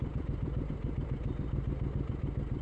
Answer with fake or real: fake